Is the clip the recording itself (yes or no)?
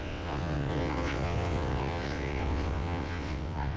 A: no